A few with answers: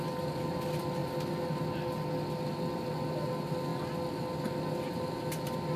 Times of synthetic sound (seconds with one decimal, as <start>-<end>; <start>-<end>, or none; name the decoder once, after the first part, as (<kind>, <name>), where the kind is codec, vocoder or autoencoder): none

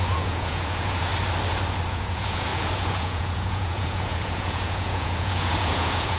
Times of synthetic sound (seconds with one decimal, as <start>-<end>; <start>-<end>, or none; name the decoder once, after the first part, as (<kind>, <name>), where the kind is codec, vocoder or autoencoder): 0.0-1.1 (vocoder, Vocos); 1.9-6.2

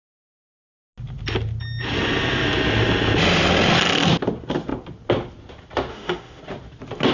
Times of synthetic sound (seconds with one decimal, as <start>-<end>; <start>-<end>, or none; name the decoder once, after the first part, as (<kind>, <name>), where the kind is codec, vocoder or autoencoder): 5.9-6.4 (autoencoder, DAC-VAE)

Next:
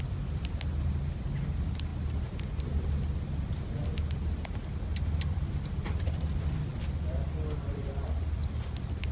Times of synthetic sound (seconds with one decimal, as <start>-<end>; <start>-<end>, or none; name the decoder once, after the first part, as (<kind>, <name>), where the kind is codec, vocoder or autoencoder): none